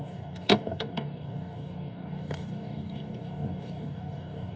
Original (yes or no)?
no